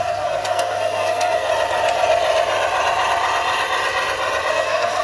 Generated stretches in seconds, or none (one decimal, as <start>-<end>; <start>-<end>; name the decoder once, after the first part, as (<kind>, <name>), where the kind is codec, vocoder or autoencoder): 0.0-1.5 (codec, SNAC); 4.5-5.0